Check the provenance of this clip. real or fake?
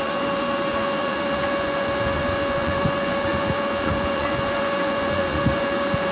fake